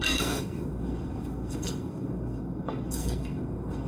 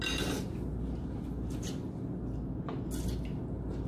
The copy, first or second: first